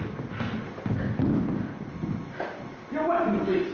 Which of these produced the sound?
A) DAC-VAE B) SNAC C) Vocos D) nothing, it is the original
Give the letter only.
D